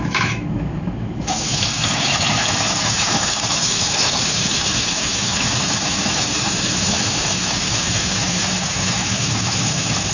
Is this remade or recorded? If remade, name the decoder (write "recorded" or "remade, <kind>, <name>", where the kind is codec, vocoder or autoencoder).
remade, autoencoder, DAC-VAE